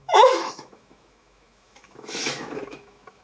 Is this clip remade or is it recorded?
remade